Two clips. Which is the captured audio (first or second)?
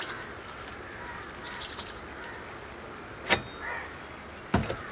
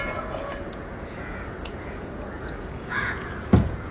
first